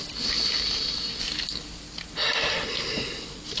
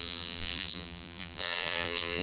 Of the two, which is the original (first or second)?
first